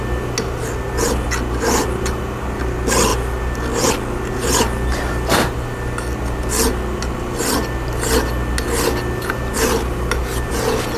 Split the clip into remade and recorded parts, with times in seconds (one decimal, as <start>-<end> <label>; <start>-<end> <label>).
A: 0.0-11.0 recorded